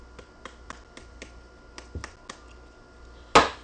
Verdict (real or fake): real